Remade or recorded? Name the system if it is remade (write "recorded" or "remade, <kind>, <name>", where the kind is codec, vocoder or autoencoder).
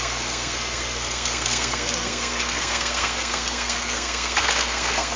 remade, codec, SNAC